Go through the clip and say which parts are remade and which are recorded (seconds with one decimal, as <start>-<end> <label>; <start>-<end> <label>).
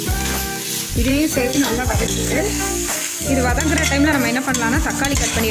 0.0-1.1 recorded; 1.1-3.3 remade; 3.3-5.5 recorded